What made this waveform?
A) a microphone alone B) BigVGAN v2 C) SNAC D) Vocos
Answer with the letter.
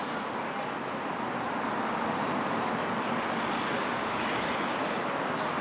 A